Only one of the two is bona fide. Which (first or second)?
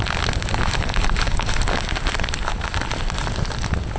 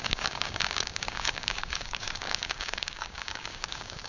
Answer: first